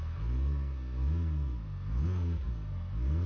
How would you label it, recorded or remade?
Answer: remade